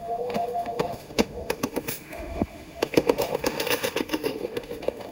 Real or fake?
fake